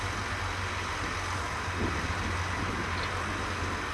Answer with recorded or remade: recorded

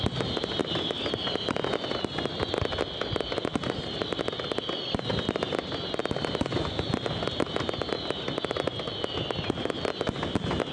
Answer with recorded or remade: recorded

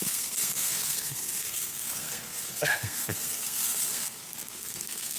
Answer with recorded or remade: remade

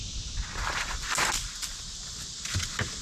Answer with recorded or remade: recorded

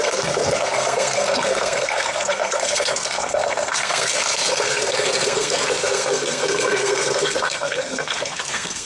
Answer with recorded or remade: remade